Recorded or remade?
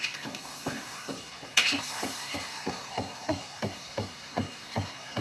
remade